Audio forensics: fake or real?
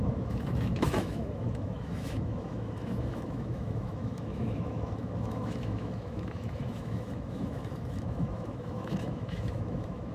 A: fake